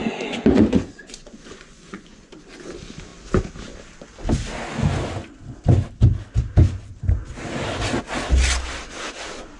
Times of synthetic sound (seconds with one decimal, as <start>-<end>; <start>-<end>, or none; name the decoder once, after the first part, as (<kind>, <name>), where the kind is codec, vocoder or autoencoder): 0.0-2.3 (vocoder, Vocos)